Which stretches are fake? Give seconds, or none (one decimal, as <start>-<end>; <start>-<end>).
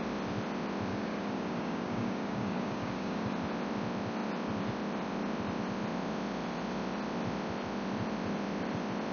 0.9-3.3